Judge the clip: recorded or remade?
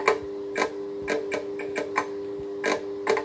recorded